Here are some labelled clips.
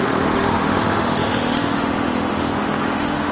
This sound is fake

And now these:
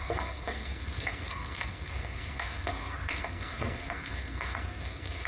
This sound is fake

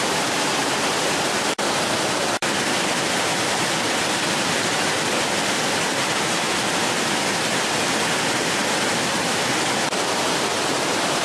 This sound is fake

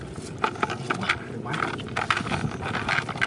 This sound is real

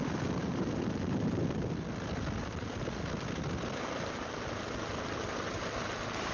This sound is real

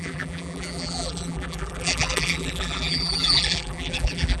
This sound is fake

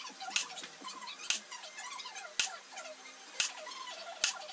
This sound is real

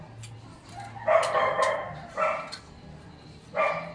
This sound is real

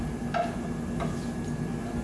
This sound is real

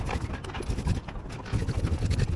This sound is real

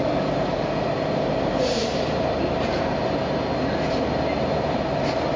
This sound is real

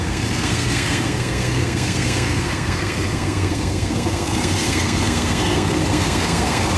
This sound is fake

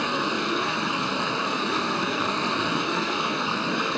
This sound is fake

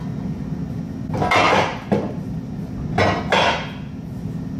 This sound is real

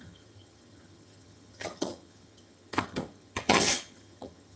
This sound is fake